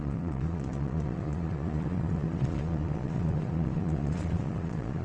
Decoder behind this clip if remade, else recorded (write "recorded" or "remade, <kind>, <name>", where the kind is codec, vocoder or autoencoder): remade, vocoder, Vocos